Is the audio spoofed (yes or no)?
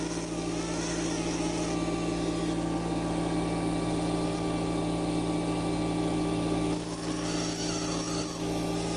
no